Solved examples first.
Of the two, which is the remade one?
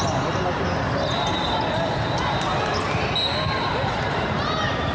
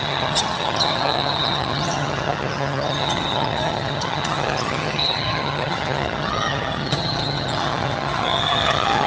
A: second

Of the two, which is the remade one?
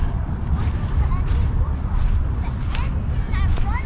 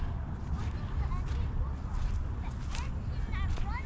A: first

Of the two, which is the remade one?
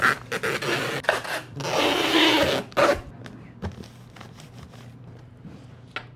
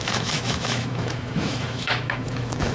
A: second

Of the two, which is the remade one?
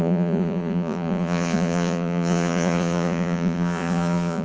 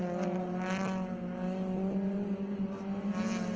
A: first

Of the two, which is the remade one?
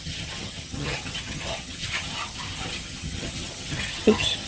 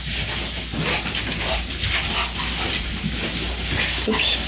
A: first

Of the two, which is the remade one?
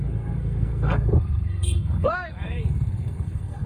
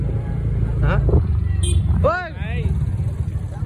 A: first